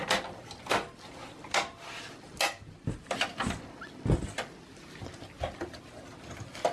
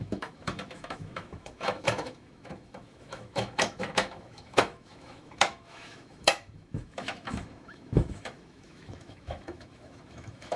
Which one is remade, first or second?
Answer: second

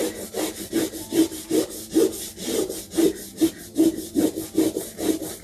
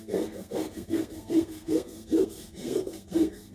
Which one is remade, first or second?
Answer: second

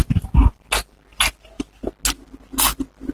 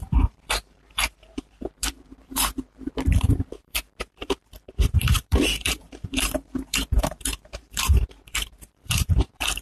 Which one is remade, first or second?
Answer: second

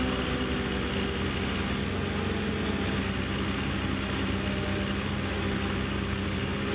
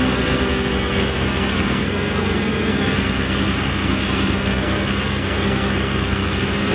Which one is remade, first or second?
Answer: second